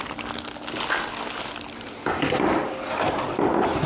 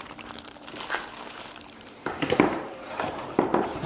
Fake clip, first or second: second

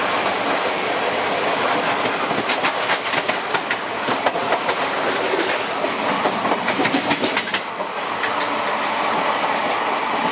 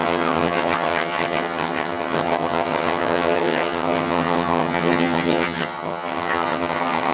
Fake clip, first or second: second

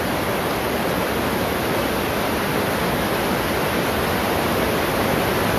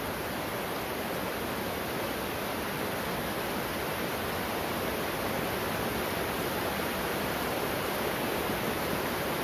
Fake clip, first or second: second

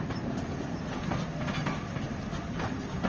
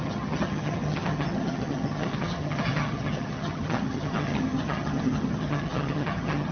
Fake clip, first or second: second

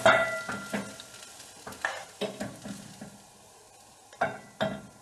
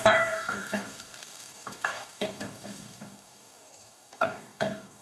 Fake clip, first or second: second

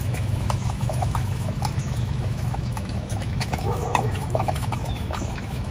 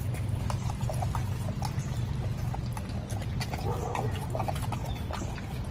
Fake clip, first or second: first